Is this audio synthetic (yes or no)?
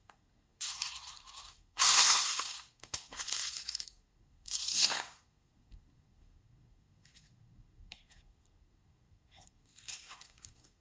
yes